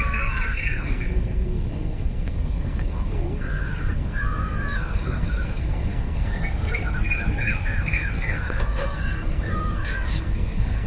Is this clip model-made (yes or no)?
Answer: yes